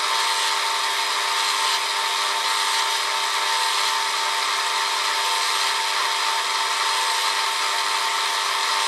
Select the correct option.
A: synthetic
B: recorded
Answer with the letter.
B